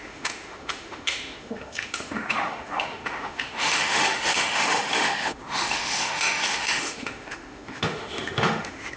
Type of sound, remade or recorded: remade